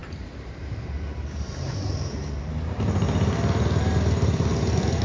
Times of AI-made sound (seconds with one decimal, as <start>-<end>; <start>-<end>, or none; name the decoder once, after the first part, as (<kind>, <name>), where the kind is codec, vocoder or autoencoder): 0.0-3.0 (vocoder, BigVGAN v2)